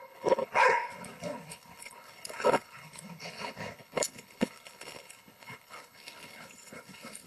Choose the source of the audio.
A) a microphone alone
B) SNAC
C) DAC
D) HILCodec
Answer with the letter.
D